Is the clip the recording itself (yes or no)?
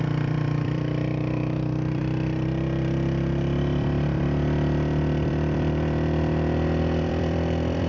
no